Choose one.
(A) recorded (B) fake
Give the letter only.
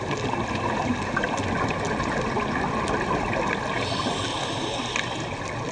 A